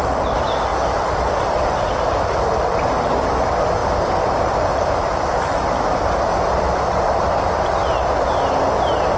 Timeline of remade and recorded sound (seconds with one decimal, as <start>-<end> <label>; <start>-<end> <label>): 0.0-9.2 recorded